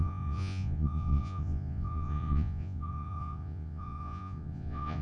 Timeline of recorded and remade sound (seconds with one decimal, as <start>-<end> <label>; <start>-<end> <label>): 0.0-5.0 remade